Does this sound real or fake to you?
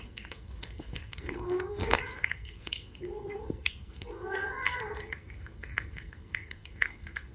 fake